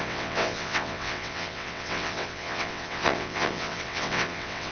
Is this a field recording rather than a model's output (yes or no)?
no